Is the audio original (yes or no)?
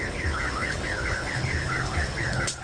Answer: no